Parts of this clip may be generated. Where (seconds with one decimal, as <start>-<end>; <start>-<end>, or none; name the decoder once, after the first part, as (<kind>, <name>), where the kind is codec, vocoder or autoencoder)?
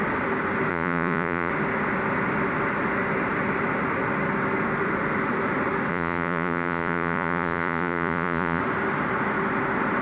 0.7-1.5 (vocoder, Vocos); 5.9-8.6